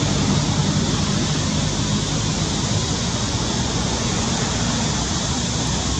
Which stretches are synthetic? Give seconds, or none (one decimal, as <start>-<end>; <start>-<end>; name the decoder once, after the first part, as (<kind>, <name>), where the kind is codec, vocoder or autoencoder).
2.8-4.3 (vocoder, Vocos)